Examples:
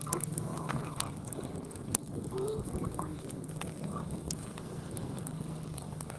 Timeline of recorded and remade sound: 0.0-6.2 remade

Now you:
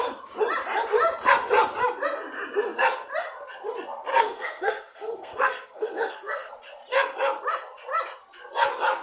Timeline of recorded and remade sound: 0.0-4.1 recorded; 4.1-6.5 remade; 6.5-9.0 recorded

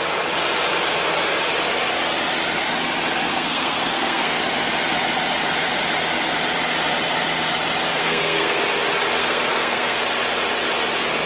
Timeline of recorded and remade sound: 0.0-3.3 recorded; 3.3-4.4 remade; 4.4-7.9 recorded; 7.9-8.6 remade; 8.6-9.2 recorded; 9.2-10.0 remade; 10.0-11.3 recorded

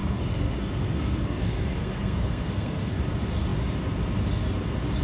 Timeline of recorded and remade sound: 0.0-3.0 remade; 3.0-5.0 recorded

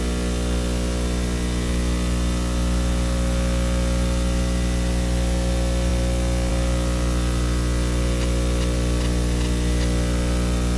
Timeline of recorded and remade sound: 0.0-10.8 recorded

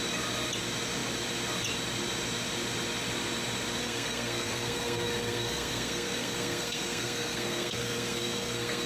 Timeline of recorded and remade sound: 0.0-3.8 recorded; 3.8-8.9 remade

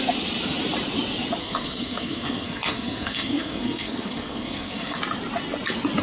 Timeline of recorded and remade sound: 0.0-1.4 recorded; 1.4-5.0 remade; 5.0-6.0 recorded